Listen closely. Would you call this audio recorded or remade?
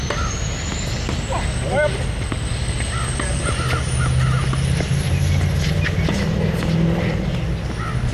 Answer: recorded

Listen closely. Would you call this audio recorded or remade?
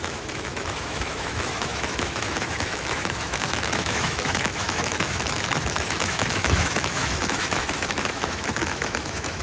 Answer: remade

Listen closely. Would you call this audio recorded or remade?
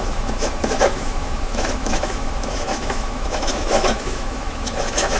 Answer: remade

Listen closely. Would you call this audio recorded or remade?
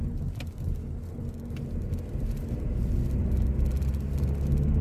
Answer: recorded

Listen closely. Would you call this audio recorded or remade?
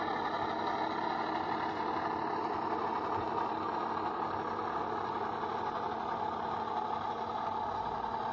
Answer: recorded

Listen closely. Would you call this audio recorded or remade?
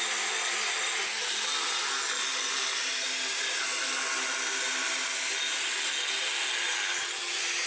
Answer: recorded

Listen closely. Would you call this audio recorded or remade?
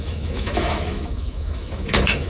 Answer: remade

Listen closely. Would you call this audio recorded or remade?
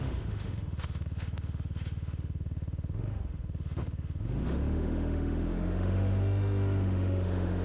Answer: remade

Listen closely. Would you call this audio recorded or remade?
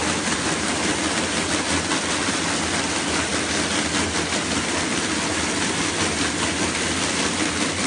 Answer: recorded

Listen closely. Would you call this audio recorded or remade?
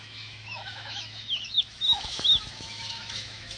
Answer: remade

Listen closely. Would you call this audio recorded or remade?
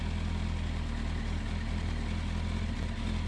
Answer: recorded